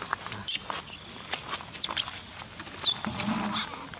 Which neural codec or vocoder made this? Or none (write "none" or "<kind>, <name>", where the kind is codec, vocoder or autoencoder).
none